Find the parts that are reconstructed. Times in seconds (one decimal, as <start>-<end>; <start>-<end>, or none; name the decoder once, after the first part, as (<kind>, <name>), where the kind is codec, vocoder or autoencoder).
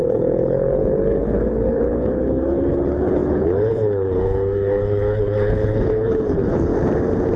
0.0-6.7 (codec, HILCodec)